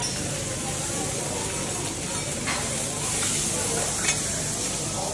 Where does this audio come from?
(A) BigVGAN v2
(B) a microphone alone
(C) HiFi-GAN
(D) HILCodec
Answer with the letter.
B